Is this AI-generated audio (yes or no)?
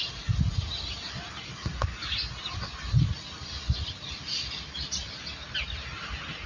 no